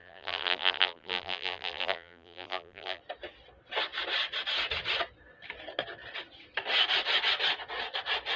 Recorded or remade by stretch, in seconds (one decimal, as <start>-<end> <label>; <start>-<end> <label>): 0.0-3.0 remade; 3.0-8.4 recorded